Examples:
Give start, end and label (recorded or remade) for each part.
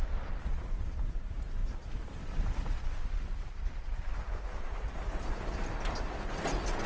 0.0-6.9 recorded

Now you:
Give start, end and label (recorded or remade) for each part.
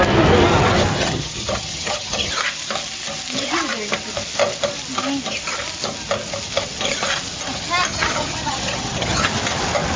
0.0-0.9 recorded; 0.9-2.3 remade; 2.3-7.9 recorded; 7.9-9.3 remade; 9.3-10.0 recorded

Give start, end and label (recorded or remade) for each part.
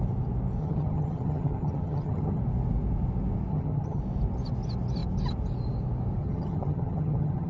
0.0-0.6 recorded; 0.6-2.4 remade; 2.4-3.5 recorded; 3.5-4.0 remade; 4.0-6.2 recorded; 6.2-7.5 remade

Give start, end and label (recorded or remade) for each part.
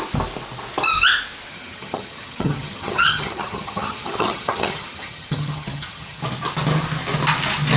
0.0-1.5 recorded; 1.5-6.2 remade; 6.2-7.8 recorded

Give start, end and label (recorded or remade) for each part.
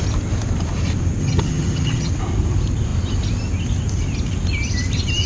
0.0-1.2 recorded; 1.2-2.1 remade; 2.1-5.3 recorded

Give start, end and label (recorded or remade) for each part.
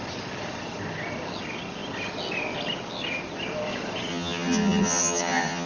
0.0-4.1 recorded; 4.1-5.7 remade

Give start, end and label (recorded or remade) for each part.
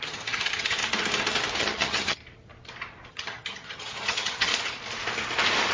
0.0-0.8 remade; 0.8-1.6 recorded; 1.6-2.2 remade; 2.2-3.1 recorded; 3.1-4.5 remade; 4.5-5.7 recorded